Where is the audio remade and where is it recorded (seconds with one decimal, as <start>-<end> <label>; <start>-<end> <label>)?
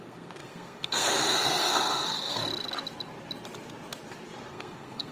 0.0-2.4 remade; 2.4-4.5 recorded; 4.5-5.1 remade